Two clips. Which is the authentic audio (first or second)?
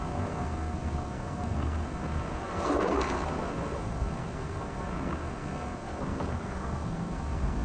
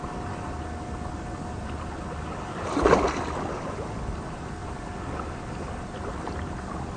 second